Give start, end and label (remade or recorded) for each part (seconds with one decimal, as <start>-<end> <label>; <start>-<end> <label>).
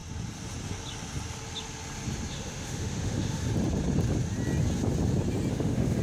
0.0-2.3 recorded; 2.3-3.4 remade; 3.4-5.5 recorded; 5.5-6.0 remade